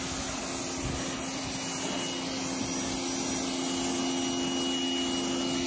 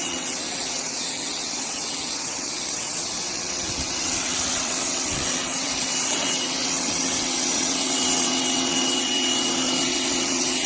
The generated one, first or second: second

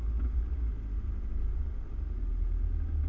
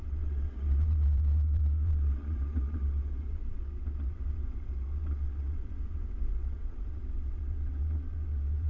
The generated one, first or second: second